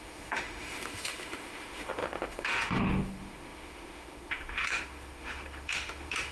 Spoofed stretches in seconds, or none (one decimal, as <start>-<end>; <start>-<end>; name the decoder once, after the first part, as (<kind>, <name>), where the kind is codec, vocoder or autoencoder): 0.0-6.3 (autoencoder, DAC-VAE)